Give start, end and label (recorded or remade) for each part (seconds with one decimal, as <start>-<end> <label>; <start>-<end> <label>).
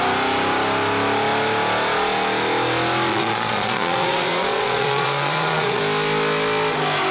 0.0-3.1 recorded; 3.1-5.8 remade; 5.8-7.1 recorded